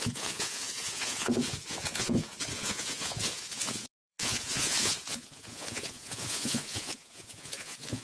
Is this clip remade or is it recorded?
remade